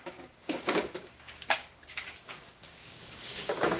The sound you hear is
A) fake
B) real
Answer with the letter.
A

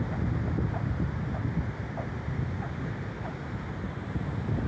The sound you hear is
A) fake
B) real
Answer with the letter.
B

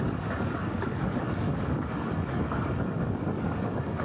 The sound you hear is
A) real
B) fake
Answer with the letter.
B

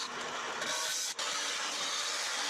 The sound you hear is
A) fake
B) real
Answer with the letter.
B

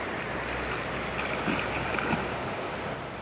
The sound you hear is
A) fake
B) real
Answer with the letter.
B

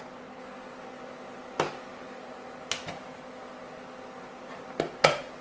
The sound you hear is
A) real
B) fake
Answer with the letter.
A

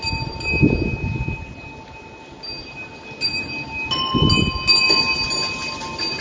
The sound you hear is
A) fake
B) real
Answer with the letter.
B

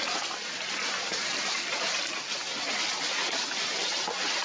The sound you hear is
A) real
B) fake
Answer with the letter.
A